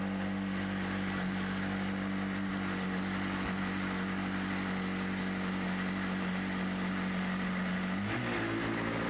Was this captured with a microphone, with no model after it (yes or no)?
yes